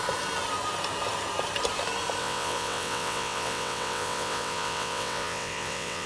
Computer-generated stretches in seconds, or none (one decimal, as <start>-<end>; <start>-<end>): 2.2-6.1